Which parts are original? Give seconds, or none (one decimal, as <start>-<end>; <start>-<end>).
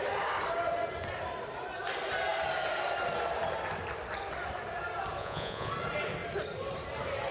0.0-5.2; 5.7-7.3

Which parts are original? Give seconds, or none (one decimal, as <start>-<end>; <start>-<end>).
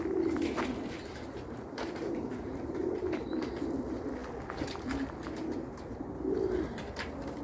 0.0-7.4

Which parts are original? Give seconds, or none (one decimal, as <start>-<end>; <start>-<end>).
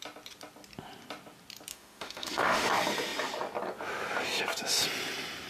0.0-1.7; 2.7-5.5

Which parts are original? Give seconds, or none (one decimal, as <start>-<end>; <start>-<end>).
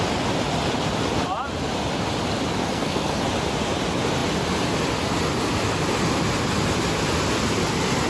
0.0-2.6; 3.2-8.1